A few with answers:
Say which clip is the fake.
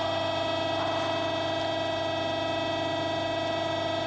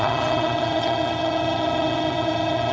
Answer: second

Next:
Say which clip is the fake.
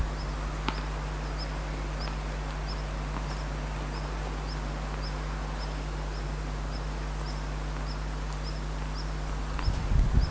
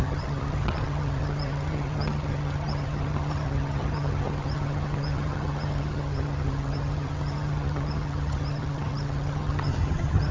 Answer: second